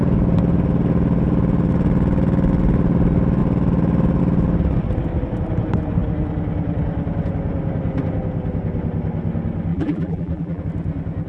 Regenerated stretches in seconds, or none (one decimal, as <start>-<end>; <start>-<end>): 9.7-10.6